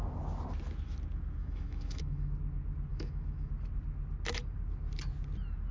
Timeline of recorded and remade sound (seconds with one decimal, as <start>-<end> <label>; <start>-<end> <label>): 0.0-1.4 recorded; 1.4-2.3 remade; 2.3-2.9 recorded; 2.9-3.5 remade; 3.5-5.7 recorded